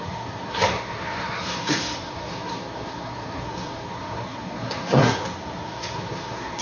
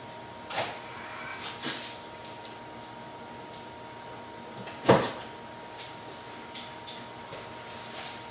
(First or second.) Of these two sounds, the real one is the second